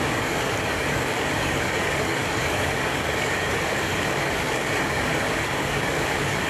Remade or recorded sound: remade